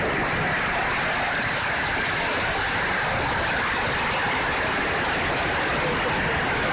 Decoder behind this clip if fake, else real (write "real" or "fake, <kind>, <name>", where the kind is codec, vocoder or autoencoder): real